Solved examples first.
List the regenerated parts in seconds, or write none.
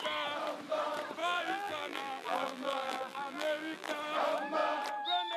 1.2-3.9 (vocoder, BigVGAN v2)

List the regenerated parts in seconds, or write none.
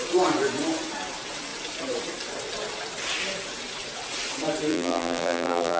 4.7-5.8 (vocoder, BigVGAN v2)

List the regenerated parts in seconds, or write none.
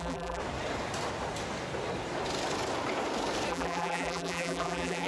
0.0-0.4 (vocoder, BigVGAN v2); 3.5-5.1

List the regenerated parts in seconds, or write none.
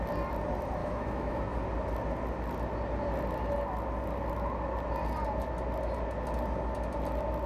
0.8-1.4 (autoencoder, DAC-VAE)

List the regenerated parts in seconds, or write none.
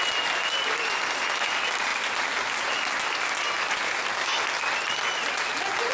none